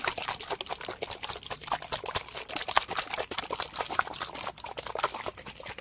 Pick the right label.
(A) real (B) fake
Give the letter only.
A